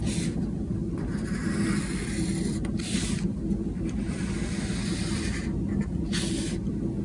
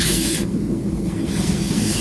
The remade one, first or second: second